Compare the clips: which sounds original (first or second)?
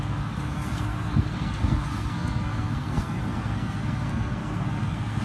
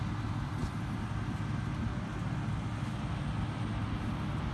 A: second